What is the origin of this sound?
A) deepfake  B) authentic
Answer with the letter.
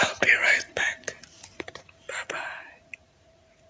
A